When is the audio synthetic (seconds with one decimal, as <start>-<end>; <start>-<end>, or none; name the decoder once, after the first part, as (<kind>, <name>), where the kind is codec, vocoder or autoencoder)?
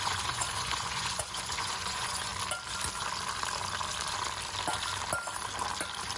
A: 0.0-2.3 (vocoder, Vocos)